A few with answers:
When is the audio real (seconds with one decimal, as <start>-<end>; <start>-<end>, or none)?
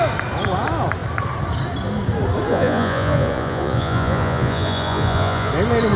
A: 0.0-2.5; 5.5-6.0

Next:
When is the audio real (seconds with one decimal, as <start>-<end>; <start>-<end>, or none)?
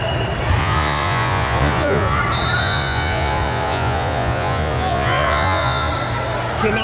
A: 0.0-0.6; 2.2-2.6; 5.9-6.8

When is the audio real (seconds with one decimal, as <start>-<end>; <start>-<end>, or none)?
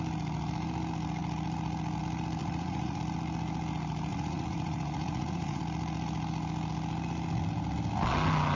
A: 0.0-2.4; 3.0-4.1; 5.6-8.5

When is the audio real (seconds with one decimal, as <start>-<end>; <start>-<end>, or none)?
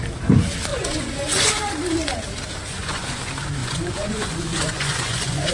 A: 0.0-0.7; 1.5-2.7; 3.2-3.6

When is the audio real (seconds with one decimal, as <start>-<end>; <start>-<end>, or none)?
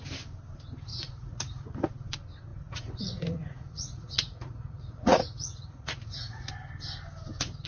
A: 0.0-0.9; 1.9-2.5; 6.5-7.7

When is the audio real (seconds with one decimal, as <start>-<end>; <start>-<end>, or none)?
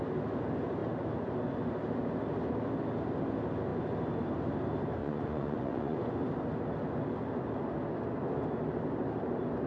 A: 0.0-5.0; 6.2-9.7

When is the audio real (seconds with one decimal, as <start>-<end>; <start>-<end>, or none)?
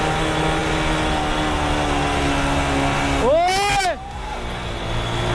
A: 0.0-5.3